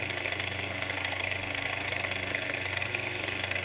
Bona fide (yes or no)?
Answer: no